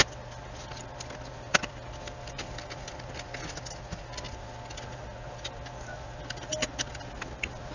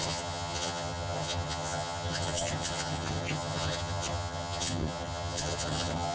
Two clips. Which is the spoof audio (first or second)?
second